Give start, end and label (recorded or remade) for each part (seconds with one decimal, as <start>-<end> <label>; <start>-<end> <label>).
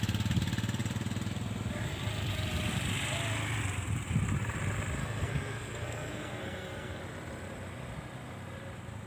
0.0-5.0 recorded; 5.0-7.0 remade; 7.0-9.1 recorded